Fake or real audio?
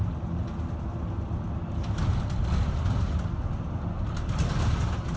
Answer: real